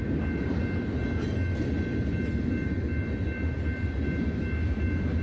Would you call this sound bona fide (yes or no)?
yes